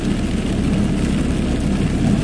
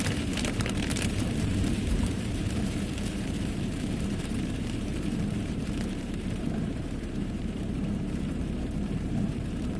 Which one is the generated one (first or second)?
second